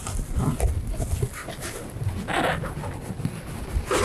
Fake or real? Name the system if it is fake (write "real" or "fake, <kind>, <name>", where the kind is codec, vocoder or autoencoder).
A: real